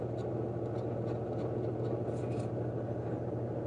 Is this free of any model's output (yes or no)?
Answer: yes